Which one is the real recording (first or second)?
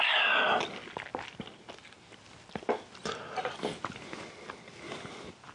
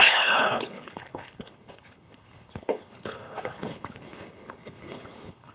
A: first